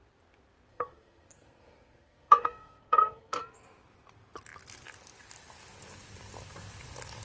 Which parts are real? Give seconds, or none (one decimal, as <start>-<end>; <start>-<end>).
0.0-0.7; 3.4-7.2